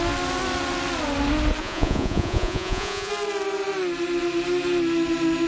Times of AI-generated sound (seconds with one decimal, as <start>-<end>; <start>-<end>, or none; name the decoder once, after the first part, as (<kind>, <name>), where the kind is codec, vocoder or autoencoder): 1.6-3.1 (vocoder, Vocos)